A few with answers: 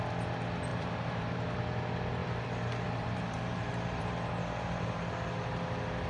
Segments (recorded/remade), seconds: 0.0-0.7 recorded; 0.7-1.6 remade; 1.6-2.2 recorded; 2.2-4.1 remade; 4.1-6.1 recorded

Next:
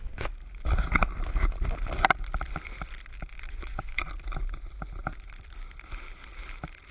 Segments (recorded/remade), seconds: 0.0-3.3 recorded; 3.3-4.1 remade; 4.1-6.9 recorded

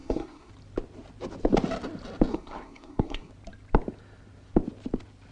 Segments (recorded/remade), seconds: 0.0-0.5 remade; 0.5-2.3 recorded; 2.3-3.3 remade; 3.3-5.3 recorded

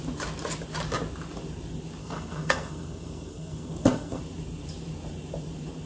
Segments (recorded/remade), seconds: 0.0-2.0 recorded; 2.0-4.2 remade; 4.2-5.9 recorded